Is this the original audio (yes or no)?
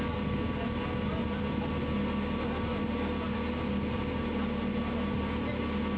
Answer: yes